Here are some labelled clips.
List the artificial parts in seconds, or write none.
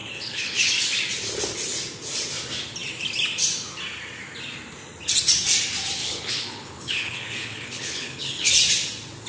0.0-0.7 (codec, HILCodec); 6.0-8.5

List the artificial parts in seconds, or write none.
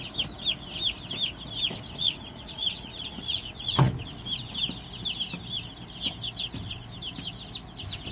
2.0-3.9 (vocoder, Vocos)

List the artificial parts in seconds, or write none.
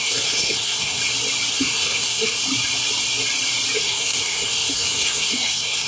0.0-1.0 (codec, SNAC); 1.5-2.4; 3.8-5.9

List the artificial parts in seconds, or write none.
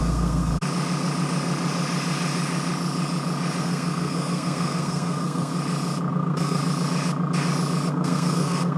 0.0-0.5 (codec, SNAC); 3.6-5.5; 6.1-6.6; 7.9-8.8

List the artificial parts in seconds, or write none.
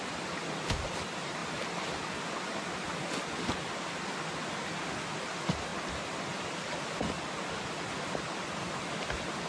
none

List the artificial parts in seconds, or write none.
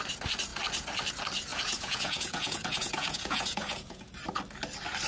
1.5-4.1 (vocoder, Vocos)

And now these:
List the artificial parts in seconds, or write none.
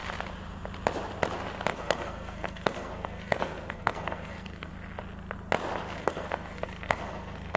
1.7-4.7 (codec, SNAC); 6.0-7.6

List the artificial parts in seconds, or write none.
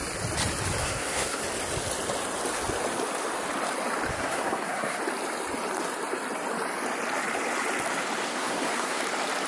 0.8-1.4 (codec, SNAC); 4.1-5.0; 8.3-9.0